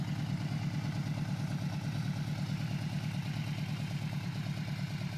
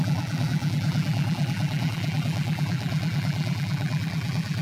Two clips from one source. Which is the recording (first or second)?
first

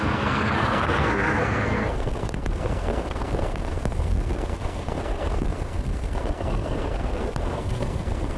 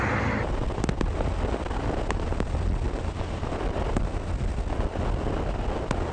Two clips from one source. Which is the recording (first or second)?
second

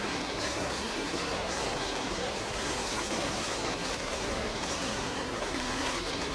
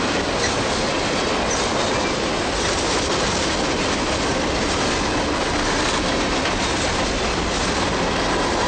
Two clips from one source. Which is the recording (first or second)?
second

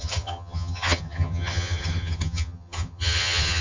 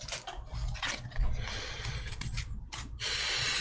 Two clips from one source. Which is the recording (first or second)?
second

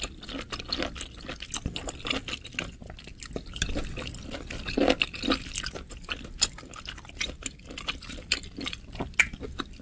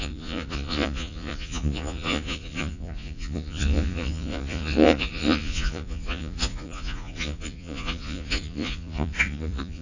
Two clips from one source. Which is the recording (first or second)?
first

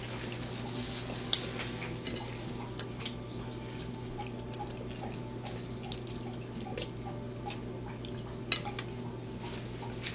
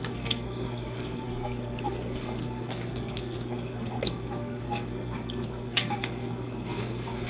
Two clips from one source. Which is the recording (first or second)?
first